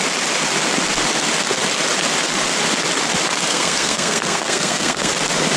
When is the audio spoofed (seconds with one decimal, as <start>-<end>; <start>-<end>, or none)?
3.5-5.1